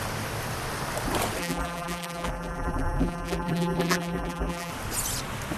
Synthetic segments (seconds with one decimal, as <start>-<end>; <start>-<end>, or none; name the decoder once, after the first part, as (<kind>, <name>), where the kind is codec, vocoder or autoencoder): 1.4-4.7 (vocoder, BigVGAN v2)